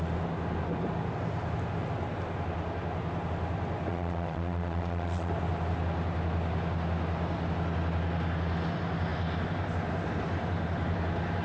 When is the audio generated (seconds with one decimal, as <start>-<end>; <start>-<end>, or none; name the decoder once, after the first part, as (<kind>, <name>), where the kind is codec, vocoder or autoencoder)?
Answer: 3.9-5.3 (vocoder, Vocos)